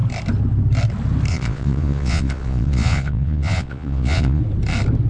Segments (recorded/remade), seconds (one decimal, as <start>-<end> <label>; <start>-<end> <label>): 0.0-1.3 recorded; 1.3-4.4 remade; 4.4-5.1 recorded